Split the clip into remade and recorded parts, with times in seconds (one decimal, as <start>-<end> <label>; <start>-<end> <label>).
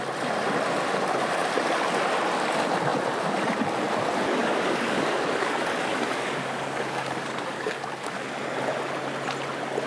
0.0-4.4 recorded; 4.4-8.3 remade; 8.3-9.9 recorded